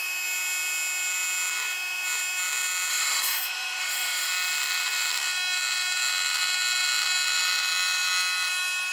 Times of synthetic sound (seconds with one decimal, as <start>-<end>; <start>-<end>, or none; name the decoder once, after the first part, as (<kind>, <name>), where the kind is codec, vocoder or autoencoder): 2.9-4.3 (autoencoder, DAC-VAE)